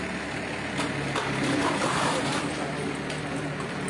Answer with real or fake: real